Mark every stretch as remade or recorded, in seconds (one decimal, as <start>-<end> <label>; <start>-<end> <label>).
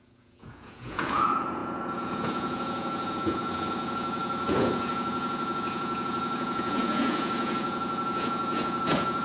0.0-9.2 remade